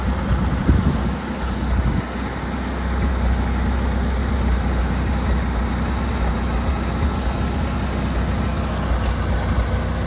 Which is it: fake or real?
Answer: real